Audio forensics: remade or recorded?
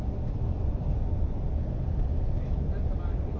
recorded